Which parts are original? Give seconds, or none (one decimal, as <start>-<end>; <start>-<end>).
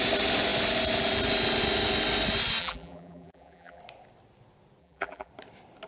0.0-2.6; 3.8-4.8; 5.3-5.9